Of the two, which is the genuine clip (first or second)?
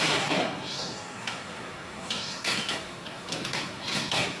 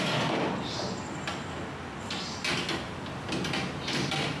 second